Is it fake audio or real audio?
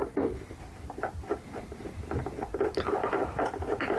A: real